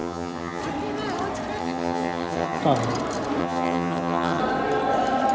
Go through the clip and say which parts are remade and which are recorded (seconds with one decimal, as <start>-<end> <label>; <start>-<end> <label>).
0.0-0.6 remade; 0.6-1.6 recorded; 1.6-2.6 remade; 2.6-3.4 recorded; 3.4-4.4 remade; 4.4-5.3 recorded